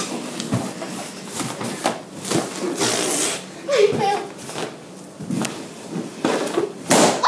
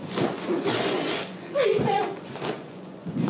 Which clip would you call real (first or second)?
first